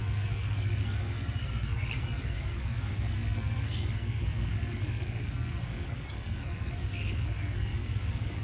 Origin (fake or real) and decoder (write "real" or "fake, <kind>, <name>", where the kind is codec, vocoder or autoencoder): fake, codec, SNAC